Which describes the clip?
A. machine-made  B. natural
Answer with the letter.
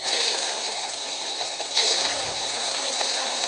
A